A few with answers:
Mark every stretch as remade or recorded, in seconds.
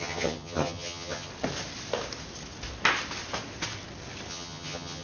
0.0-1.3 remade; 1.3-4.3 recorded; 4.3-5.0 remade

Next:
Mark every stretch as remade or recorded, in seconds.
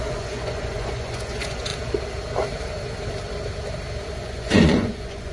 0.0-1.7 remade; 1.7-4.2 recorded; 4.2-5.3 remade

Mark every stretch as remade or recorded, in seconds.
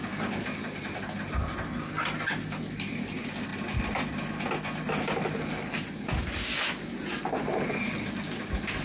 0.0-8.8 recorded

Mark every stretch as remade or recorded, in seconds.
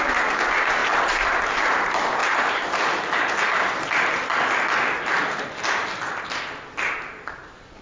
0.0-2.2 remade; 2.2-6.9 recorded; 6.9-7.8 remade